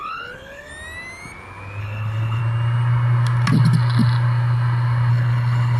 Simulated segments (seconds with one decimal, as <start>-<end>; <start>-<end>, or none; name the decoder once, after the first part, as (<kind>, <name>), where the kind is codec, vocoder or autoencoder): 0.0-0.7 (codec, HILCodec); 1.8-2.4; 5.1-5.8